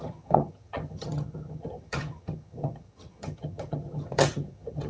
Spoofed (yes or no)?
yes